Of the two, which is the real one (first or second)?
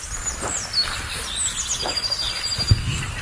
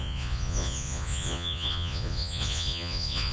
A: first